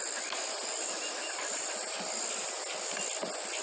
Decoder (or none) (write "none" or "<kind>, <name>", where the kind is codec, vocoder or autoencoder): none